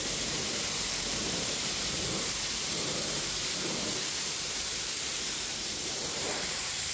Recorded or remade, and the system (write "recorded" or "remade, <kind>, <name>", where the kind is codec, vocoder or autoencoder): remade, vocoder, BigVGAN v2